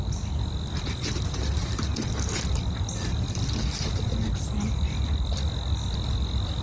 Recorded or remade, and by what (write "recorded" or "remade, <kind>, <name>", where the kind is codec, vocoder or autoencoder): recorded